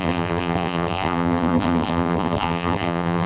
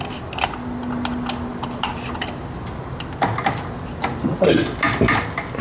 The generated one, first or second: first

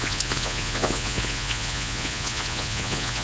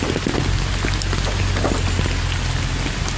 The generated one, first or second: first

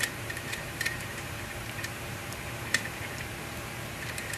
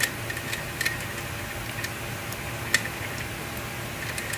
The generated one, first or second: first